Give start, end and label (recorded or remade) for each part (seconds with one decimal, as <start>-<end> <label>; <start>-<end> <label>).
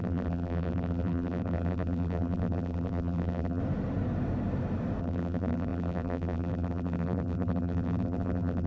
0.0-3.6 remade; 3.6-5.0 recorded; 5.0-8.7 remade